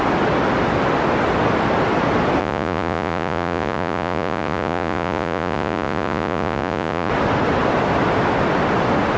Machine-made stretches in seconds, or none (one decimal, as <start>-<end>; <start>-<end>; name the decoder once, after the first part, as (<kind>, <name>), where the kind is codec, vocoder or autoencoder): 2.4-7.1 (vocoder, Vocos)